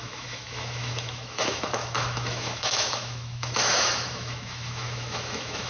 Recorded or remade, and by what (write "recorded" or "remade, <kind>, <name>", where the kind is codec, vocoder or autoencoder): remade, autoencoder, DAC-VAE